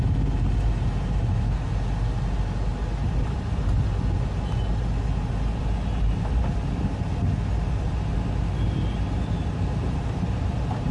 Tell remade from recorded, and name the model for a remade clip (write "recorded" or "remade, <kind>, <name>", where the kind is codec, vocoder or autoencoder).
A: recorded